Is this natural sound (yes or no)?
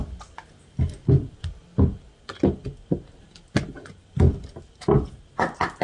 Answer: yes